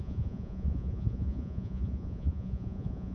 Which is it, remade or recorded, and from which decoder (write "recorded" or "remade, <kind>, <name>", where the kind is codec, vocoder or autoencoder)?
remade, vocoder, Vocos